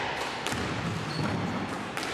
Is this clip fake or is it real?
real